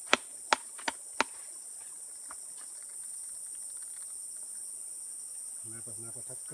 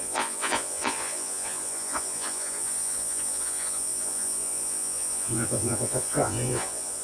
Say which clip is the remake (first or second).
second